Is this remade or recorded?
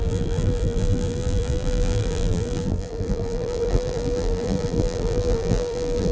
remade